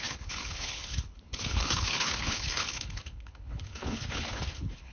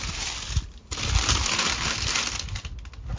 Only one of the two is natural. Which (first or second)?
second